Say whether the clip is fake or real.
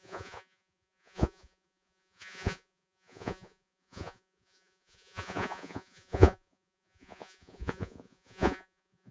fake